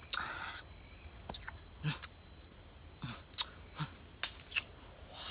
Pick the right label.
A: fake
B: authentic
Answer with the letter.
B